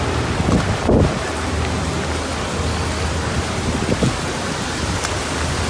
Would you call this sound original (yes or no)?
yes